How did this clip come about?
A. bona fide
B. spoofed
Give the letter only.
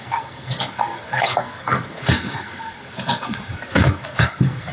B